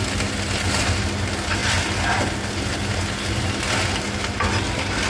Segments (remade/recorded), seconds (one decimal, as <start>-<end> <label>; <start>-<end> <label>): 0.0-5.1 recorded